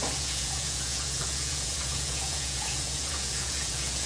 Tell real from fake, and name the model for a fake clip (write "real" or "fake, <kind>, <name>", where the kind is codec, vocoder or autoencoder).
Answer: fake, vocoder, Vocos